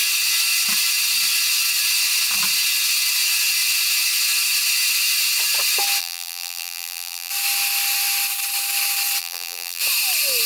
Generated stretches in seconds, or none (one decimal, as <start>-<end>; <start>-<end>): 6.0-7.3; 9.2-9.8

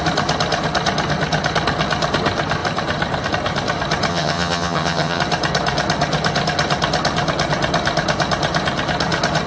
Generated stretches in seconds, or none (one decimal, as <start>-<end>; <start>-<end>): 4.1-5.2

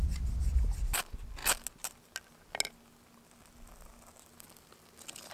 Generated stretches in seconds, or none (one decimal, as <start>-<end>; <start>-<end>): none

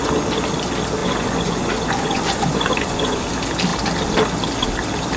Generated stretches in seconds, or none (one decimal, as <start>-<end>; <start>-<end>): 1.0-3.3

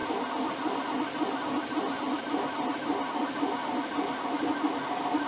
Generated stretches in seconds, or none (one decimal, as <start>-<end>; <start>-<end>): none

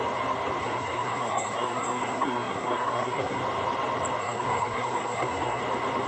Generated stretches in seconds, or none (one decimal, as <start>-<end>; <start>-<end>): 0.6-3.4; 4.2-5.6